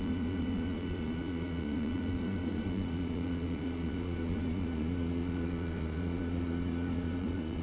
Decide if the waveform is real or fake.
fake